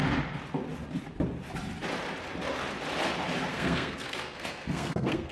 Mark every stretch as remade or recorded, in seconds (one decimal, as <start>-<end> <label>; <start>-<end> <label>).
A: 0.0-3.5 recorded; 3.5-5.3 remade